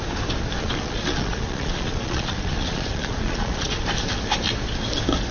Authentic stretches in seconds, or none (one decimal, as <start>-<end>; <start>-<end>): 0.0-0.6; 3.8-5.3